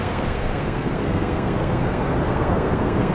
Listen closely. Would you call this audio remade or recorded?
remade